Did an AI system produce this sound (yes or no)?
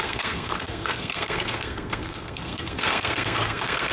yes